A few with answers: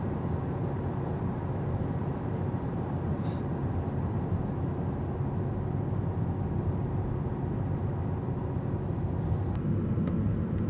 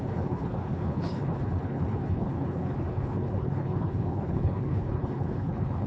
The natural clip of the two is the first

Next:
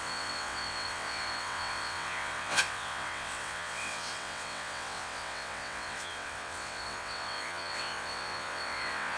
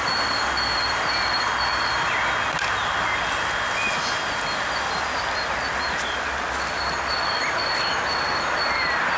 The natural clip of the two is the second